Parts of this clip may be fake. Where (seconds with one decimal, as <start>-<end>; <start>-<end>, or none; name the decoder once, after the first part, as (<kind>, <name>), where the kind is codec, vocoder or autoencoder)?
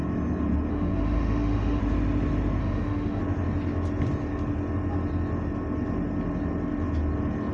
0.7-1.8 (autoencoder, DAC-VAE); 2.6-3.2